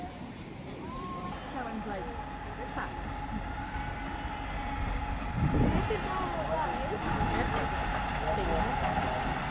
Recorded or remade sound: recorded